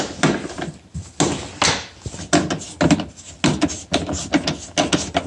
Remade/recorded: recorded